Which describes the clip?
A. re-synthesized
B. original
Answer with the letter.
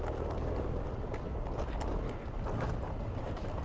B